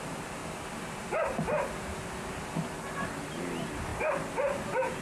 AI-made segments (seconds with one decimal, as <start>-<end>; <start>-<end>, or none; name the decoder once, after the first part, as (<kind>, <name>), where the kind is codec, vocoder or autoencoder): none

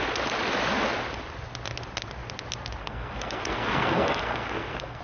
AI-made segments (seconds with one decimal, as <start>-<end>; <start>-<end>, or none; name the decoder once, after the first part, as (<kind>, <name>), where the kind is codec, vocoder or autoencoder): 2.8-5.0 (codec, SNAC)

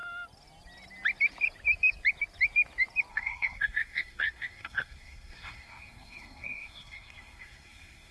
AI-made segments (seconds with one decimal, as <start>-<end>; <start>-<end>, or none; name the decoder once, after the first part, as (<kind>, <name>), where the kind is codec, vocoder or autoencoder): 3.1-8.1 (codec, SNAC)